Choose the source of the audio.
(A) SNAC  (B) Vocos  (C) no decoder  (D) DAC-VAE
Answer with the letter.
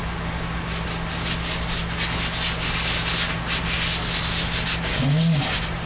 C